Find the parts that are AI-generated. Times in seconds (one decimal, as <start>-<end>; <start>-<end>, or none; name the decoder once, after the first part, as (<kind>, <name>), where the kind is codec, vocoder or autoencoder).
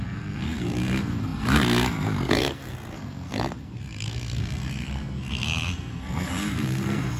0.0-7.2 (codec, SNAC)